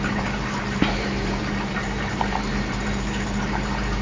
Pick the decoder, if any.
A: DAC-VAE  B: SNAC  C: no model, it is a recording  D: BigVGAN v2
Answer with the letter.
D